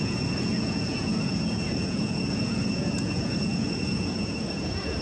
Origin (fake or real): fake